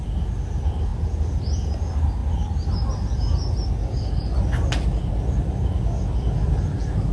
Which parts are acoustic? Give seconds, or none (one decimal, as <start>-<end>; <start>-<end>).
0.0-7.1